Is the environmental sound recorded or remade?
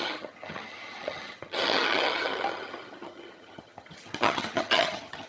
remade